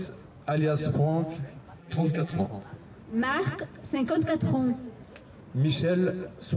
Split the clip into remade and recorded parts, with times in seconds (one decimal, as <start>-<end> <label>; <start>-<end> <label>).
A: 0.0-1.8 recorded; 1.8-2.4 remade; 2.4-6.6 recorded